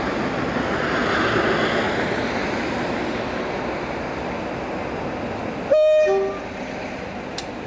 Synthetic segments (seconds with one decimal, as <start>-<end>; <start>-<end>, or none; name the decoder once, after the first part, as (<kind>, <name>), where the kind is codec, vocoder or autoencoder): none